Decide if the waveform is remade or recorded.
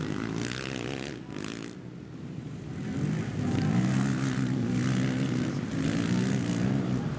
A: recorded